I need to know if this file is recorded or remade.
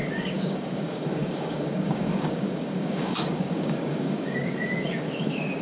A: remade